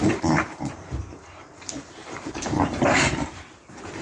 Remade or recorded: remade